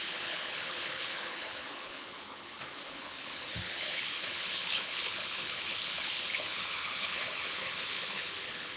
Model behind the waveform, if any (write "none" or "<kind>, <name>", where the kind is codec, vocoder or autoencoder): codec, HILCodec